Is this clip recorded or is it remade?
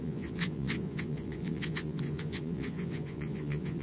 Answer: remade